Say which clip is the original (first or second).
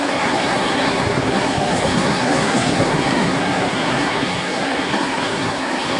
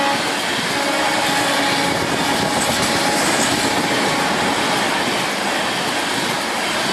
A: second